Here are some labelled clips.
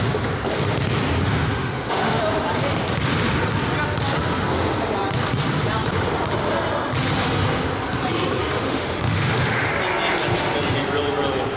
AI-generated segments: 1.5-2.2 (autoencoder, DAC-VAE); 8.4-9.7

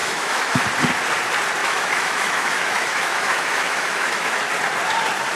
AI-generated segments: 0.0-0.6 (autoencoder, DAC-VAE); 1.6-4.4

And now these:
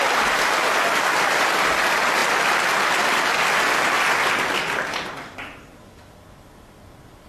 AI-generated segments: none

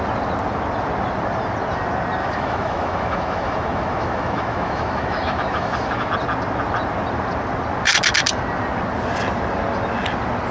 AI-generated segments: 2.2-6.1 (autoencoder, DAC-VAE)

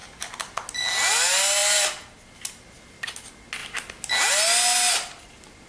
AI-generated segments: none

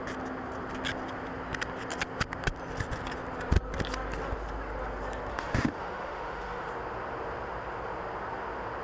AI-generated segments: 5.3-6.7 (autoencoder, DAC-VAE)